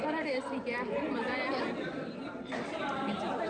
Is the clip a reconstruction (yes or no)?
yes